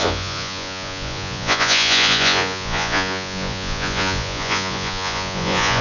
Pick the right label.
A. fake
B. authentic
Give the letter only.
A